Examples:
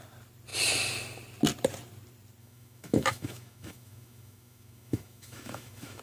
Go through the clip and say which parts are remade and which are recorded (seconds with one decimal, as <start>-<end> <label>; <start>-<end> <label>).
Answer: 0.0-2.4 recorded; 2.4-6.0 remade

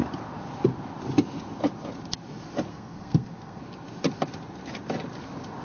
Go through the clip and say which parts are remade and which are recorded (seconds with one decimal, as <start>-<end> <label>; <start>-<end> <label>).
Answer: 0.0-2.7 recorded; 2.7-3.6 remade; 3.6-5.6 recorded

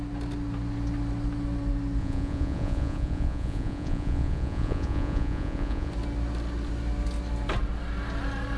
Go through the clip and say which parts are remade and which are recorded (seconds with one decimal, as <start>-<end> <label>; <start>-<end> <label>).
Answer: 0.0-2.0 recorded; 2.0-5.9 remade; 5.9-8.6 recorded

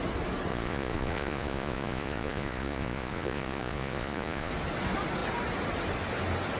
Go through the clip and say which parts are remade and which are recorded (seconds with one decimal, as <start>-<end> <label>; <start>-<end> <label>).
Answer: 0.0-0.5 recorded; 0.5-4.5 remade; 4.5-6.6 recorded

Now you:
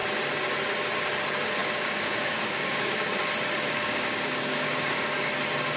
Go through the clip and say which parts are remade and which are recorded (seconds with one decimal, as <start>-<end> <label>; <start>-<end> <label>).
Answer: 0.0-1.6 recorded; 1.6-3.1 remade; 3.1-3.8 recorded; 3.8-5.3 remade; 5.3-5.8 recorded